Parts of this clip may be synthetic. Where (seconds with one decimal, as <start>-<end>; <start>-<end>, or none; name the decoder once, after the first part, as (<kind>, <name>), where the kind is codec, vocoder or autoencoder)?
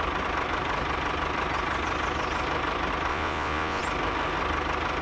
3.1-3.8 (vocoder, Vocos)